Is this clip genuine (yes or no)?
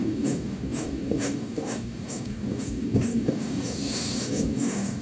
no